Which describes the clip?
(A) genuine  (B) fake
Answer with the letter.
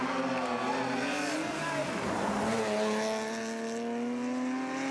A